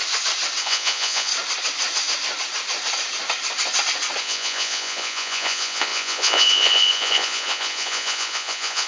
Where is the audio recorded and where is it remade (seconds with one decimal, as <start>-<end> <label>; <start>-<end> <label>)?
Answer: 0.0-0.6 recorded; 0.6-1.3 remade; 1.3-4.2 recorded; 4.2-8.9 remade